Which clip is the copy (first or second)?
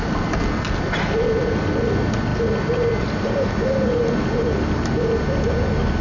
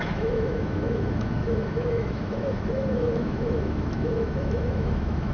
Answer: second